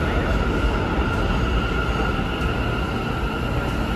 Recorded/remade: recorded